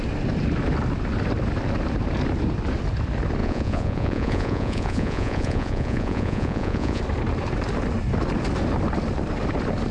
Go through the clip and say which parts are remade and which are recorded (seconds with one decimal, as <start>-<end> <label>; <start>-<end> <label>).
0.0-3.4 recorded; 3.4-7.0 remade; 7.0-9.9 recorded